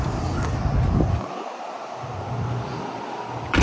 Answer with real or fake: real